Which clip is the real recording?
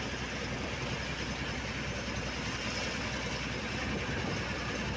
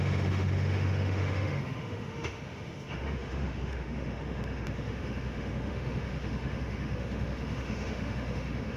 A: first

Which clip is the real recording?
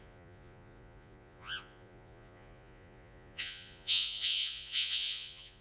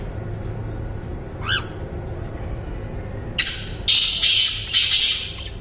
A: second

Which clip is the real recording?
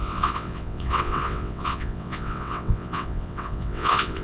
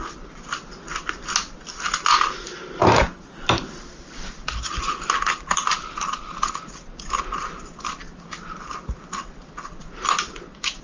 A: second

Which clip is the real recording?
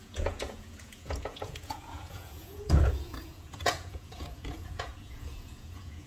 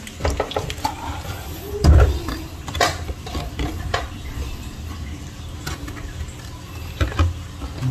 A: second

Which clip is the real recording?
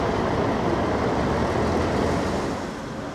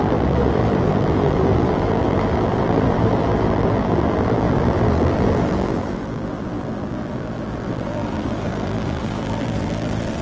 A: first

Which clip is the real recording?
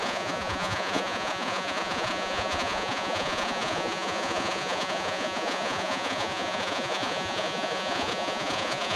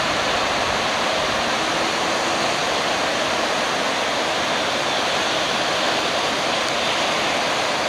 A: second